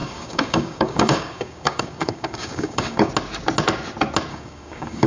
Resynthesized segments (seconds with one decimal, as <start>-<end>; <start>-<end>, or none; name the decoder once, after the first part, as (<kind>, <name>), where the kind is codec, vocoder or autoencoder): 0.0-3.1 (codec, DAC); 4.3-5.1